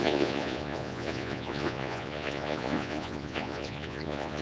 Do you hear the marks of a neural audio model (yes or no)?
yes